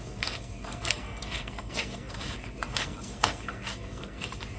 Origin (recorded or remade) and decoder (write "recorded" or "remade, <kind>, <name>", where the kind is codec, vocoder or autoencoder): remade, codec, SNAC